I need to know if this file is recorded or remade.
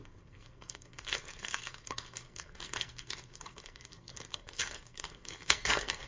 remade